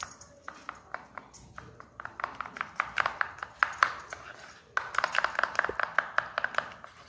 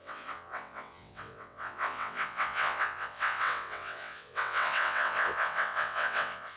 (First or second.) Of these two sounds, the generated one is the second